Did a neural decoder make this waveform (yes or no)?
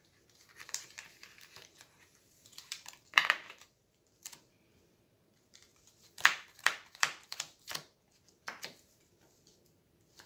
yes